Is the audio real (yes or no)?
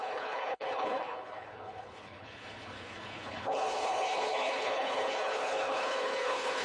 no